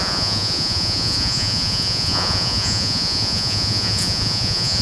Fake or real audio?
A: fake